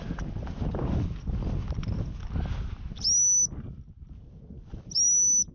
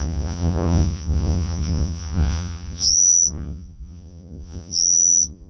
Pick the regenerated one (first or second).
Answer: second